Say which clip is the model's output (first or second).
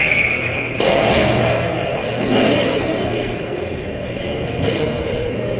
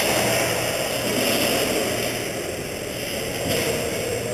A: first